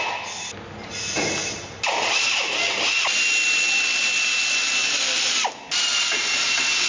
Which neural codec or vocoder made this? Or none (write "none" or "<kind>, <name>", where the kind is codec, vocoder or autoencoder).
none